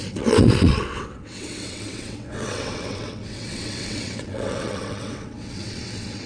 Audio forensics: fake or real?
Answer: fake